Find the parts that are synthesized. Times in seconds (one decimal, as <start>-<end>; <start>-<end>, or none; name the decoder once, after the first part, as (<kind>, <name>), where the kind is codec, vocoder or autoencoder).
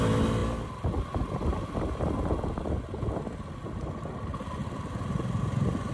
none